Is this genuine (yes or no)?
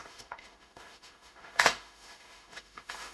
no